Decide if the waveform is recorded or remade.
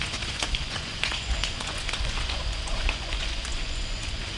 remade